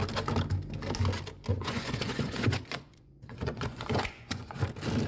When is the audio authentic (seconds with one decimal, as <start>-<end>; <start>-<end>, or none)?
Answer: 0.0-1.5; 4.6-5.1